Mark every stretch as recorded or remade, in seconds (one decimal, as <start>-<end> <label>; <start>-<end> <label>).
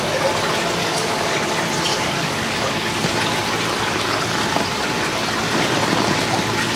0.0-0.8 recorded; 0.8-1.5 remade; 1.5-1.9 recorded; 1.9-2.9 remade; 2.9-6.8 recorded